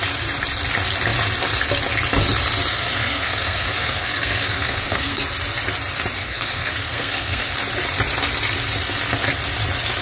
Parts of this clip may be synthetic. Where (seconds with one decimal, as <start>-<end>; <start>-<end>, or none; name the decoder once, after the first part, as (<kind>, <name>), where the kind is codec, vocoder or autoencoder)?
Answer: 2.7-5.2 (codec, SNAC); 6.2-7.5